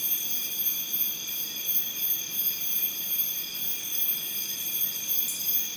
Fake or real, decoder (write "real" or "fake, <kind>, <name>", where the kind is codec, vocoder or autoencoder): fake, vocoder, BigVGAN v2